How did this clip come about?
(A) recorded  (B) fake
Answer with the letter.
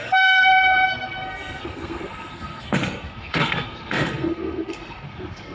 B